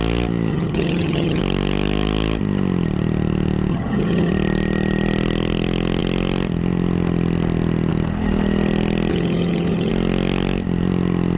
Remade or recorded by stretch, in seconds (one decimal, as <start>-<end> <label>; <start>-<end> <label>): 0.0-0.5 recorded; 0.5-1.4 remade; 1.4-3.7 recorded; 3.7-4.3 remade; 4.3-9.1 recorded; 9.1-9.9 remade; 9.9-11.4 recorded